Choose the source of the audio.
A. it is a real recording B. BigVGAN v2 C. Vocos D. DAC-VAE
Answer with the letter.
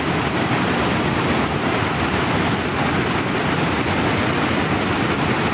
A